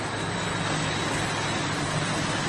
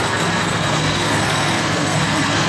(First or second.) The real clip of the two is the first